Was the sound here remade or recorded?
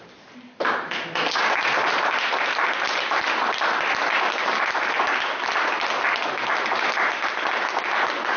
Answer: recorded